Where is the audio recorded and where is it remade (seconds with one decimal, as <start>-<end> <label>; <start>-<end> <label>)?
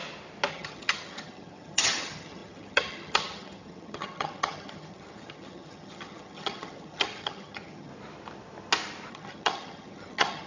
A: 0.0-0.5 recorded; 0.5-7.9 remade; 7.9-9.1 recorded; 9.1-10.5 remade